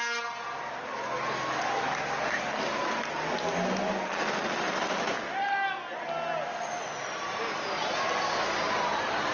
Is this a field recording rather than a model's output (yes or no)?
yes